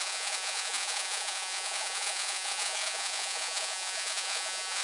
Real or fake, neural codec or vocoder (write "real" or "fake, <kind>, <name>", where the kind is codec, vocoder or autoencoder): fake, vocoder, Vocos